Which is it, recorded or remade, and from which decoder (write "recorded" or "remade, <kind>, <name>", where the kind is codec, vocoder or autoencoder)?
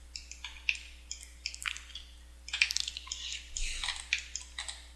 recorded